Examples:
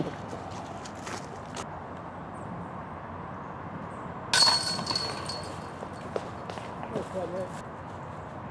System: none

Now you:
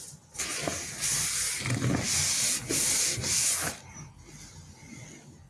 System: none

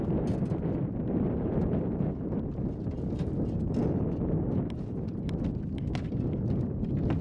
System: none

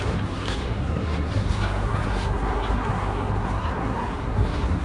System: codec, SNAC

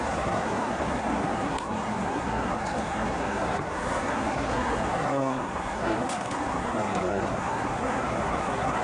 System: codec, SNAC